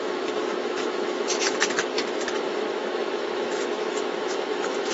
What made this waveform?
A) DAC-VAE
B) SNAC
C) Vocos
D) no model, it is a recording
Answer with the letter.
A